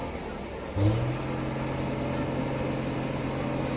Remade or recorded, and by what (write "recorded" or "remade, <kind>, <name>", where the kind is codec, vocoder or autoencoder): recorded